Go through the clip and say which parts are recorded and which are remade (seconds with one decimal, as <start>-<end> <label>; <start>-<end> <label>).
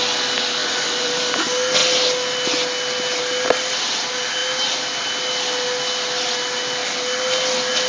0.0-0.6 recorded; 0.6-1.2 remade; 1.2-7.9 recorded